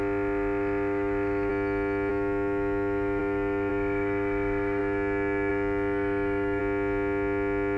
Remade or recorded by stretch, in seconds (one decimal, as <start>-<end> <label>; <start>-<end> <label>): 0.0-1.5 remade; 1.5-2.1 recorded; 2.1-6.6 remade; 6.6-7.8 recorded